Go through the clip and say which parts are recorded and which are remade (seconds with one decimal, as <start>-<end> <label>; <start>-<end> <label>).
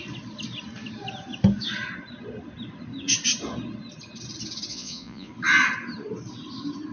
0.0-4.7 recorded; 4.7-5.3 remade; 5.3-6.9 recorded